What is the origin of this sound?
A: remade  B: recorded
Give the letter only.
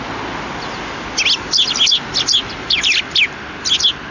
B